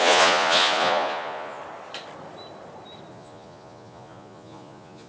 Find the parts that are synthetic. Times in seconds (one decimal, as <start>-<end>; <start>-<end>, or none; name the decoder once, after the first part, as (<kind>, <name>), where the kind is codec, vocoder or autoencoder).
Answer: 0.0-1.6 (vocoder, Vocos); 3.1-5.1

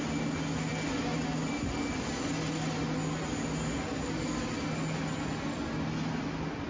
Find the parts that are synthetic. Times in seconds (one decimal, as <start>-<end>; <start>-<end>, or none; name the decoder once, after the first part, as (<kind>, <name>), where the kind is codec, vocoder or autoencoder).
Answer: none

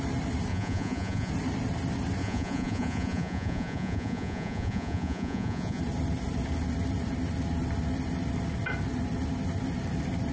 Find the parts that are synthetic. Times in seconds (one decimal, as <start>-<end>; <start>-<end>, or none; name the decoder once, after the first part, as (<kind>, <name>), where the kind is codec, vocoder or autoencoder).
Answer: 0.5-1.3 (vocoder, Vocos); 2.2-5.8

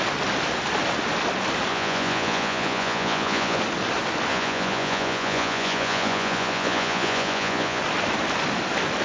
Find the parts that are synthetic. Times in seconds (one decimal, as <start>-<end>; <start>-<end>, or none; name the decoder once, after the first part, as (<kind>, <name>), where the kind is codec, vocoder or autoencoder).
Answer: 1.7-3.6 (vocoder, Vocos); 4.3-7.8

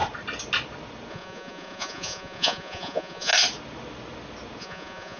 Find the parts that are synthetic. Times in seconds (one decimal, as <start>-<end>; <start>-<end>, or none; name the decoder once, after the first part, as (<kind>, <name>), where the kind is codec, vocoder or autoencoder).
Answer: 1.1-3.3 (vocoder, Vocos); 4.6-5.2